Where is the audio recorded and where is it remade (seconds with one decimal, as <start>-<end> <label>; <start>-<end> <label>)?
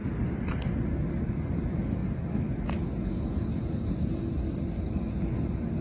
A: 0.0-5.8 recorded